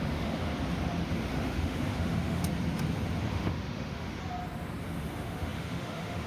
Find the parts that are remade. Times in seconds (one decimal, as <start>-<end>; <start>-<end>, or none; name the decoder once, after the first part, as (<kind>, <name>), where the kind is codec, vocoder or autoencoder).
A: 0.0-0.5 (autoencoder, DAC-VAE); 1.3-2.4; 3.3-4.2; 4.8-6.3